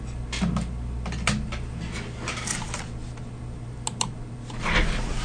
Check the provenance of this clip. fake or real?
real